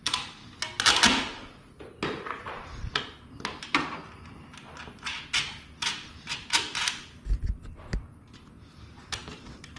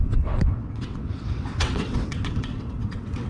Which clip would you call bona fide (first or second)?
first